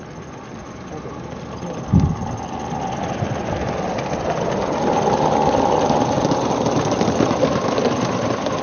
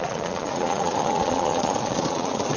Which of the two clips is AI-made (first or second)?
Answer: second